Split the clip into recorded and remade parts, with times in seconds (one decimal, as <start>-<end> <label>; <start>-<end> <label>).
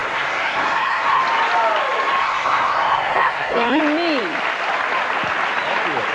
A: 0.0-1.2 remade; 1.2-2.2 recorded; 2.2-3.8 remade; 3.8-6.1 recorded